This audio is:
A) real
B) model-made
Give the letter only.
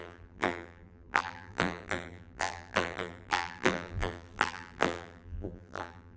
B